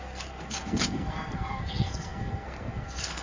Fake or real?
fake